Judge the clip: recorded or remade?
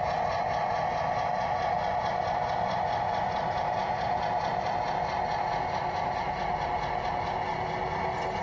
recorded